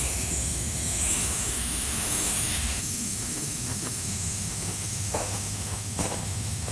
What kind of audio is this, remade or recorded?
remade